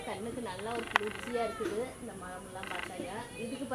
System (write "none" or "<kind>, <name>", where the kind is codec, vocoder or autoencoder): none